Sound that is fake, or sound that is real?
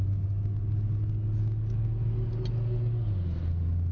real